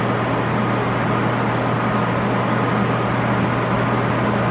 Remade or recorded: recorded